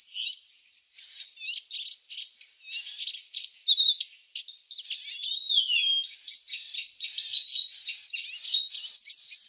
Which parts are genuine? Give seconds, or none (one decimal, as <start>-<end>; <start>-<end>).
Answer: 0.0-9.5